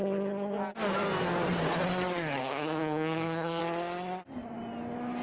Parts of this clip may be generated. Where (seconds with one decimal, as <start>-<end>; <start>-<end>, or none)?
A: 2.4-3.6